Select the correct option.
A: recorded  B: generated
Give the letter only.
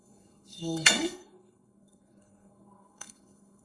B